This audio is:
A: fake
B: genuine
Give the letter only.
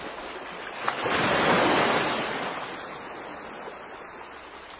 B